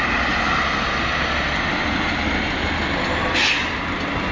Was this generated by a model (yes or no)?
no